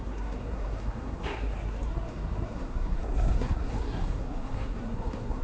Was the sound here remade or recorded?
remade